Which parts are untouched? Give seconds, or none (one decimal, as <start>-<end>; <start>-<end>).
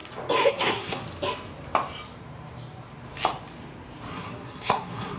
0.0-0.5; 1.0-4.1